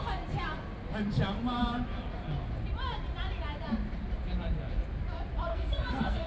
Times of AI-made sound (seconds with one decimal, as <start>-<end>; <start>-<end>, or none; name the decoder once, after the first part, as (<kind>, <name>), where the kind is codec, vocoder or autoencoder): 5.5-6.3 (codec, SNAC)